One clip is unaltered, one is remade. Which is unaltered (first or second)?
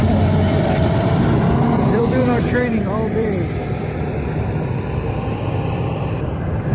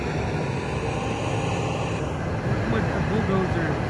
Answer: second